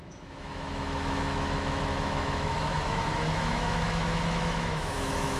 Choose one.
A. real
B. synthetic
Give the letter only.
B